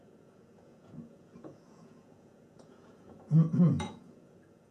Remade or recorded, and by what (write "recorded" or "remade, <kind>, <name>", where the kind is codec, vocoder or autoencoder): remade, vocoder, Vocos